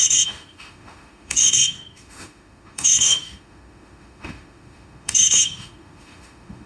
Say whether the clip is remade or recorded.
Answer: remade